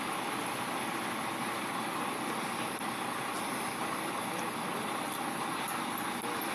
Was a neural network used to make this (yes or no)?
no